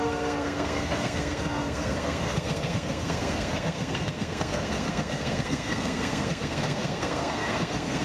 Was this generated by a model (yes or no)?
yes